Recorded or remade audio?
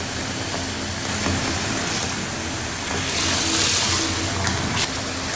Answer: recorded